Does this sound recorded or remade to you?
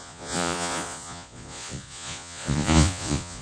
remade